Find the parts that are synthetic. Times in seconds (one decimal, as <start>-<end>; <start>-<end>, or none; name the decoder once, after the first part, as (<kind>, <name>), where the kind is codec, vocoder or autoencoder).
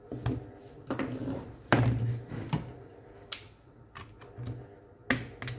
0.6-4.0 (vocoder, BigVGAN v2)